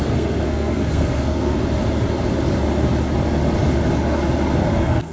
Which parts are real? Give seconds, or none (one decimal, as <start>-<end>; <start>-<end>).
1.5-4.6